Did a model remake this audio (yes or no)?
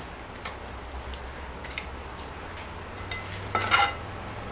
no